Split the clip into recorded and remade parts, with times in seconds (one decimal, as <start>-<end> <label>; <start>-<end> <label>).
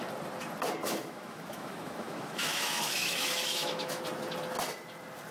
0.0-0.8 recorded; 0.8-4.0 remade; 4.0-5.3 recorded